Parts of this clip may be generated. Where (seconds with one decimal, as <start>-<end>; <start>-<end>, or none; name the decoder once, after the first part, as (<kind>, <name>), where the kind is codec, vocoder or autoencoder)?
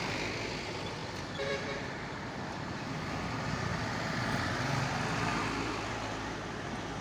1.0-3.2 (vocoder, BigVGAN v2); 3.7-4.4; 5.3-5.9